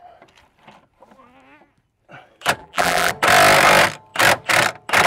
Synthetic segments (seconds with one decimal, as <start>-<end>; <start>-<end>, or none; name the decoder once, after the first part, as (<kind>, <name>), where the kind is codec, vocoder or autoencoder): 2.6-3.1 (vocoder, BigVGAN v2)